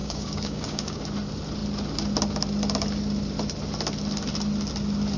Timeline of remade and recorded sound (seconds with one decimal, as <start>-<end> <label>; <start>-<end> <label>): 0.0-1.0 remade; 1.0-5.2 recorded